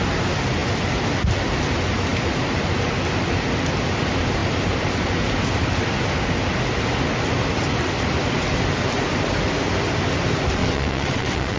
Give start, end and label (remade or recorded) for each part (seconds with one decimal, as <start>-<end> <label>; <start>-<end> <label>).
0.0-10.6 recorded; 10.6-11.6 remade